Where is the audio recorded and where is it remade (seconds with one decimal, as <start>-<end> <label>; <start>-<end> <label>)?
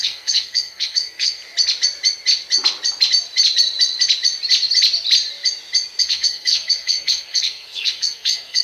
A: 0.0-1.4 remade; 1.4-6.0 recorded; 6.0-8.6 remade